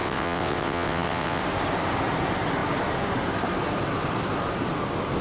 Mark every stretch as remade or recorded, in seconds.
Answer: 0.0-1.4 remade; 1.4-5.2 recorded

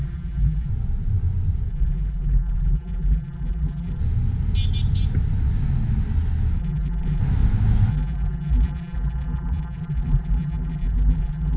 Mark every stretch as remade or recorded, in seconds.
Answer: 0.0-0.7 remade; 0.7-1.7 recorded; 1.7-4.0 remade; 4.0-6.6 recorded; 6.6-7.2 remade; 7.2-7.9 recorded; 7.9-11.6 remade